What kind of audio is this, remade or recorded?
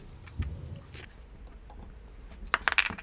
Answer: recorded